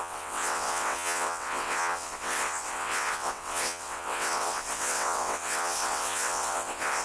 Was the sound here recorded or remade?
remade